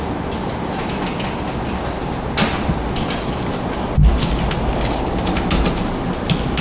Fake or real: real